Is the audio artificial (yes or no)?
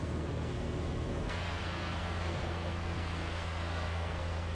yes